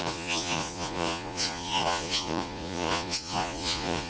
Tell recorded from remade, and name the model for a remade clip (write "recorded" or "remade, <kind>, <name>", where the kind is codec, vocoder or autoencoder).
remade, vocoder, Vocos